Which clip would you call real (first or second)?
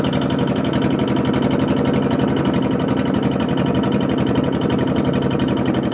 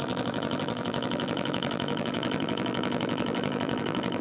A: first